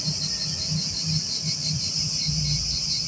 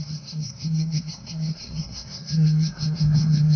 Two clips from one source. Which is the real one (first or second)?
first